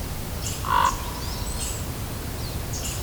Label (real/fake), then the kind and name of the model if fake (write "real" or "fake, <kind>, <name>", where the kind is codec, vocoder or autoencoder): real